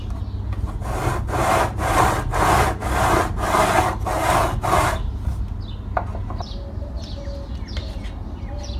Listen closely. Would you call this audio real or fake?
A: real